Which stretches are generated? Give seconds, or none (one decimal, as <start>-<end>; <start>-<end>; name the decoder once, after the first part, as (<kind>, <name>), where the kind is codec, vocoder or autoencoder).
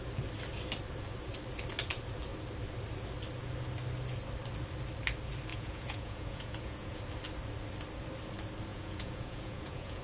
5.5-7.0 (vocoder, Vocos); 8.7-10.0